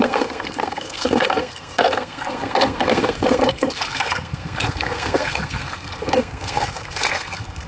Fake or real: fake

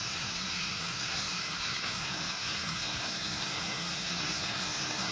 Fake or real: fake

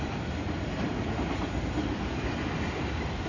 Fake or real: real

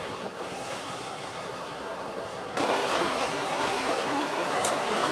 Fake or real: fake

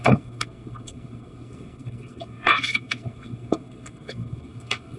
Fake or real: fake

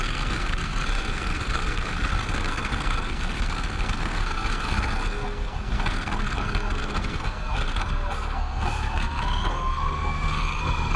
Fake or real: fake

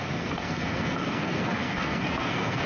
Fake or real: fake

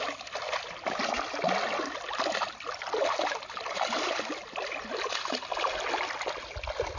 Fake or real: real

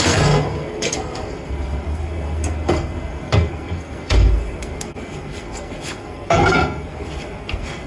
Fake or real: fake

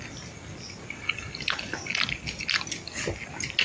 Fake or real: real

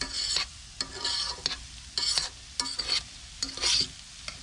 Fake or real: real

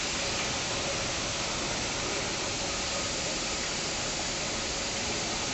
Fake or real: real